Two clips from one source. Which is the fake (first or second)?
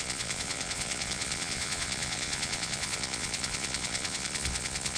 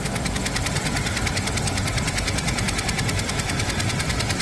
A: first